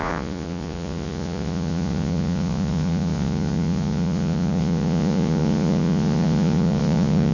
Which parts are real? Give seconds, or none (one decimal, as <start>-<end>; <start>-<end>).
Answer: none